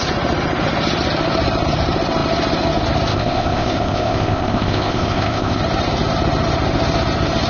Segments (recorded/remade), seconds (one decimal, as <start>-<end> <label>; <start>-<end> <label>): 0.0-3.1 recorded; 3.1-5.6 remade; 5.6-7.5 recorded